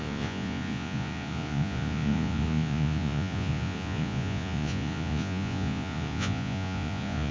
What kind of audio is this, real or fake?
fake